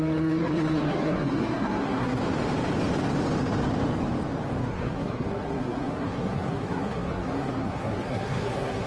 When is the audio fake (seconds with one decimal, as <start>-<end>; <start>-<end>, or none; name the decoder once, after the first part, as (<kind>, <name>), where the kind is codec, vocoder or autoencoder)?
0.0-2.2 (codec, SNAC); 4.6-8.9